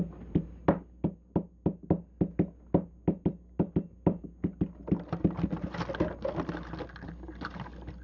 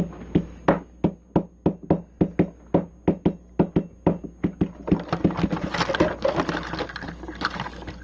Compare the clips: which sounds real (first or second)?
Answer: second